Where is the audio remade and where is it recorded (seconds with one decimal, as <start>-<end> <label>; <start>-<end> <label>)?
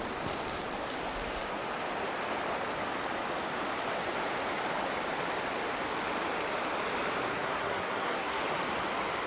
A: 0.0-7.3 recorded; 7.3-8.4 remade; 8.4-9.3 recorded